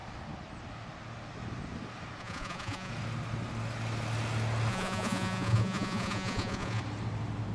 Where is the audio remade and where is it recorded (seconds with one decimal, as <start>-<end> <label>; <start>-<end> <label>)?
0.0-2.2 recorded; 2.2-2.9 remade; 2.9-4.7 recorded; 4.7-6.8 remade; 6.8-7.5 recorded